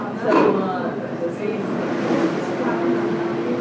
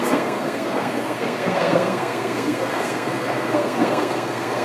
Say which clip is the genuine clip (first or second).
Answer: first